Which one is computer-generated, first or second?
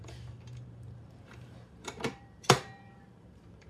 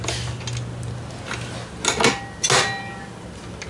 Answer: first